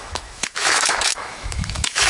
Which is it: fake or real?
fake